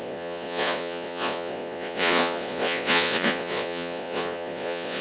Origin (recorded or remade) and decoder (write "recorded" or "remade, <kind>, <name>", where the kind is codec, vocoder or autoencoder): remade, vocoder, Vocos